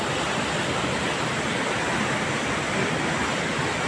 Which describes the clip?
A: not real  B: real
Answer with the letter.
B